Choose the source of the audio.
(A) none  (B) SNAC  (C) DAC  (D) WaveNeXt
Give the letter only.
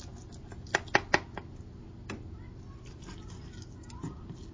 A